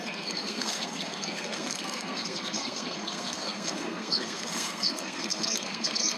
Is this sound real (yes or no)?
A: no